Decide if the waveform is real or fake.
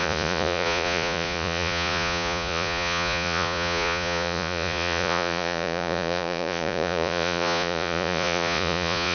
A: fake